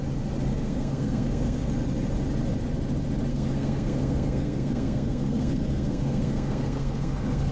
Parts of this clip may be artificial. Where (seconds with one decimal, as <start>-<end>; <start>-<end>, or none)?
0.5-1.7; 3.3-7.5